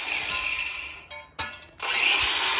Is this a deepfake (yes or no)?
no